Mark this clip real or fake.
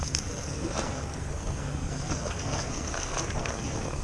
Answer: fake